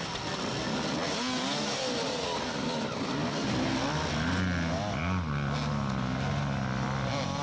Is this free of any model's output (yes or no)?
yes